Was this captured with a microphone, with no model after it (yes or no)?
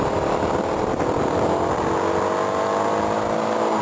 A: yes